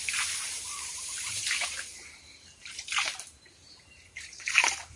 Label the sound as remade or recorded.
remade